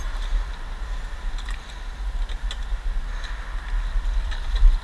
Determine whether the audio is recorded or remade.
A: recorded